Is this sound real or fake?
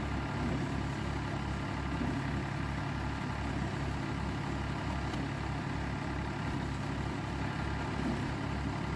real